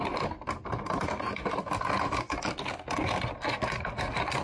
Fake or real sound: real